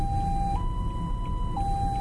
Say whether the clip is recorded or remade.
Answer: recorded